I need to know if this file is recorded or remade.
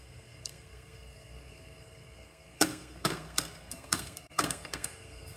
remade